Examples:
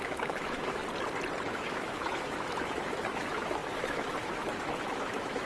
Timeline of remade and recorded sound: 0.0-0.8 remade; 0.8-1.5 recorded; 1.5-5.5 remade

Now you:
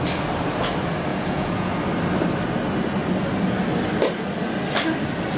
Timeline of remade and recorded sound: 0.0-1.1 recorded; 1.1-1.7 remade; 1.7-5.4 recorded

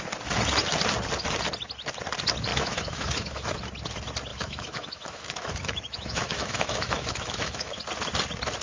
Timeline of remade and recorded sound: 0.0-2.5 recorded; 2.5-3.5 remade; 3.5-4.3 recorded; 4.3-7.8 remade; 7.8-8.6 recorded

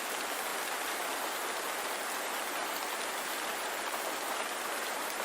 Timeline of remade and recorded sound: 0.0-5.2 recorded

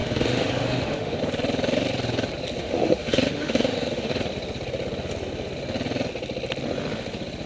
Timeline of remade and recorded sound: 0.0-1.2 remade; 1.2-2.6 recorded; 2.6-4.2 remade; 4.2-7.5 recorded

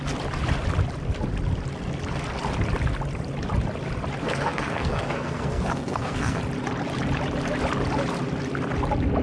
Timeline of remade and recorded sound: 0.0-4.2 recorded; 4.2-6.4 remade; 6.4-9.2 recorded

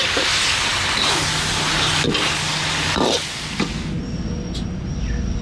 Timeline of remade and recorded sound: 0.0-5.4 recorded

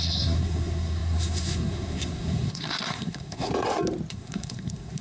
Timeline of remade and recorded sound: 0.0-3.5 remade; 3.5-4.1 recorded; 4.1-5.0 remade